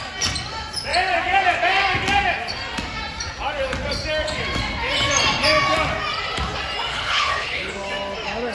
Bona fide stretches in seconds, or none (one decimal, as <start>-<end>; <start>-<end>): 0.0-6.9; 7.7-8.5